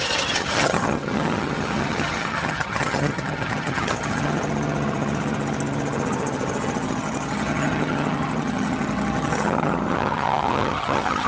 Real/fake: fake